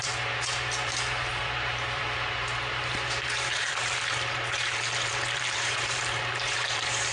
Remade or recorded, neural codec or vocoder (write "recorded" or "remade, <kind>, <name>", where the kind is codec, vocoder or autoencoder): remade, vocoder, BigVGAN v2